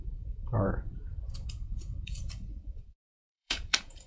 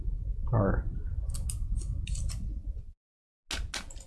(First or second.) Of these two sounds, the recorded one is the second